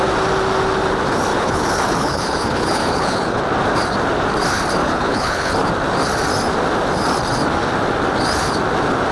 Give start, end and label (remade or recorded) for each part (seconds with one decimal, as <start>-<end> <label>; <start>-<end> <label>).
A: 0.0-1.3 recorded; 1.3-3.4 remade; 3.4-4.8 recorded; 4.8-5.5 remade; 5.5-9.1 recorded